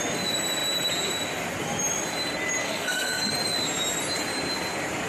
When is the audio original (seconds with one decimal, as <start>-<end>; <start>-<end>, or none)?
0.0-2.6; 3.3-5.1